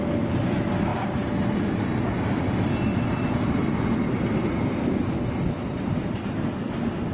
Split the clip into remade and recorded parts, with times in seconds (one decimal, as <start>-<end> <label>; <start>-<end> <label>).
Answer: 0.0-7.1 recorded